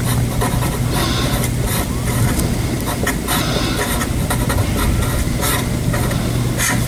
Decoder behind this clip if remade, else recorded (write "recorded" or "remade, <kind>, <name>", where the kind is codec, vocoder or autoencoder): recorded